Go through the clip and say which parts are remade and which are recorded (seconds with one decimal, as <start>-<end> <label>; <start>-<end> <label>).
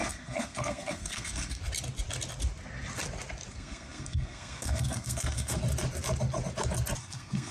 0.0-1.6 remade; 1.6-3.5 recorded; 3.5-5.6 remade; 5.6-7.0 recorded; 7.0-7.5 remade